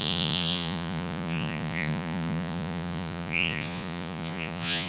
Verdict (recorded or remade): remade